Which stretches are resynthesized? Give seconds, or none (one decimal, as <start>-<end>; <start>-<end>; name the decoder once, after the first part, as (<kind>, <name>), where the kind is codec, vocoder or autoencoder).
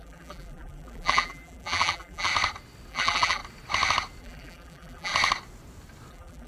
0.0-2.3 (vocoder, BigVGAN v2); 2.9-3.4; 4.2-5.1; 6.1-6.5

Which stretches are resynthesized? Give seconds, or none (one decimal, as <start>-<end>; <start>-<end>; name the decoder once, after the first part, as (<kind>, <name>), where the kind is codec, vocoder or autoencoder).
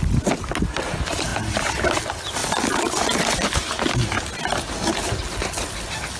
1.3-2.0 (vocoder, BigVGAN v2)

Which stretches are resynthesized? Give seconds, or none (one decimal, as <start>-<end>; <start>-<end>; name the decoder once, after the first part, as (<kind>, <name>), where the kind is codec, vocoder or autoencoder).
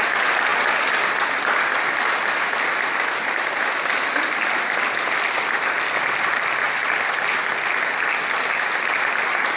none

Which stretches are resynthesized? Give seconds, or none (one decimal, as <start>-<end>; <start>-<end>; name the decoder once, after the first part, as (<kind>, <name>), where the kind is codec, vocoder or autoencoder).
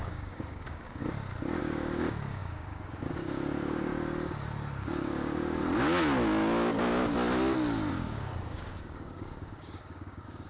0.0-1.0 (codec, DAC); 1.6-3.9; 4.8-5.6; 7.9-10.5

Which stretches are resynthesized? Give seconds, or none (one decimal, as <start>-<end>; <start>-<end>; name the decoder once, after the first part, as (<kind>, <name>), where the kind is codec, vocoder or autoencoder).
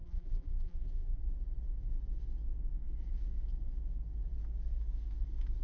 0.0-1.2 (vocoder, BigVGAN v2)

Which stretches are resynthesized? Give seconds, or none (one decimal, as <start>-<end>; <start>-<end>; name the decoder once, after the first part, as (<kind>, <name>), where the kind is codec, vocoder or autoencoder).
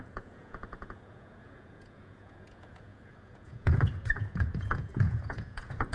0.0-5.9 (vocoder, Vocos)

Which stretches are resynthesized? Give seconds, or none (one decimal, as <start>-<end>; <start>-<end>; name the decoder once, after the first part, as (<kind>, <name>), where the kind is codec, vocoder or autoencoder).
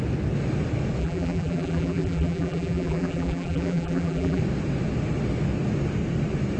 1.0-4.4 (vocoder, BigVGAN v2)